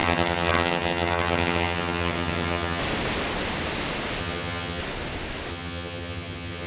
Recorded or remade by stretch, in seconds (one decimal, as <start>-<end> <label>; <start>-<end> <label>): 0.0-2.8 remade; 2.8-4.2 recorded; 4.2-4.8 remade; 4.8-5.5 recorded; 5.5-6.7 remade

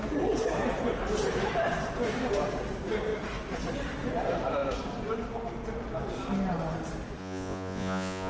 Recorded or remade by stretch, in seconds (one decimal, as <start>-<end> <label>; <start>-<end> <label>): 0.0-7.2 recorded; 7.2-8.3 remade